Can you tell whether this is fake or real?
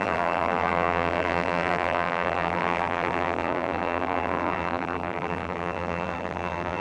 fake